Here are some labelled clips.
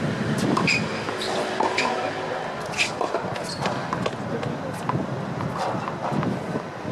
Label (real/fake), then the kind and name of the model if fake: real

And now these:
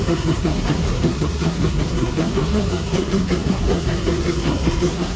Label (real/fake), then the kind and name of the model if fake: fake, codec, SNAC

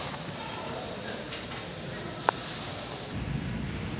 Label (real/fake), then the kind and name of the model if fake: real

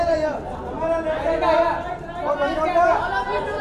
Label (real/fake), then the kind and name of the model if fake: real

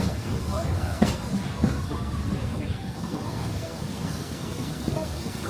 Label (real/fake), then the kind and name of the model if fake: fake, codec, SNAC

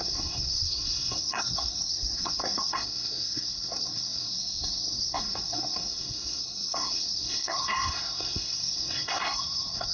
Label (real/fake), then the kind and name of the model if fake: fake, codec, SNAC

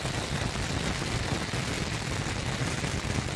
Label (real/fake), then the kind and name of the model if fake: real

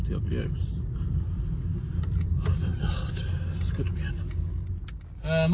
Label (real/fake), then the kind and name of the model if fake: real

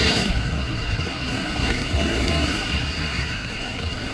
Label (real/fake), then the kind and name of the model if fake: fake, codec, SNAC